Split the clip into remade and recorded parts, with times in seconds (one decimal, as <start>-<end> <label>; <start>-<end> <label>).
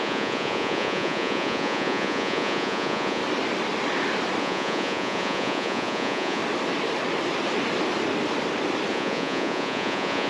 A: 0.0-3.2 remade; 3.2-4.4 recorded; 4.4-6.4 remade; 6.4-8.9 recorded; 8.9-10.3 remade